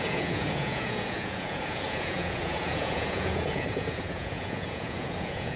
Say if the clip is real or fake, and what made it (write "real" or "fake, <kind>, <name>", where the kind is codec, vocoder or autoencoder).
fake, vocoder, Vocos